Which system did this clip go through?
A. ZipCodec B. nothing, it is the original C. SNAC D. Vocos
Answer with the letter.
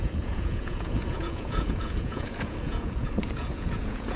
D